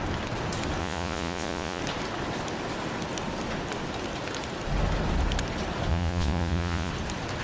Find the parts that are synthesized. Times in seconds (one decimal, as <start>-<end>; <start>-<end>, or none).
0.8-1.8; 5.9-6.9